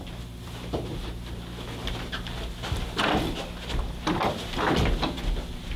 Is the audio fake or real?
real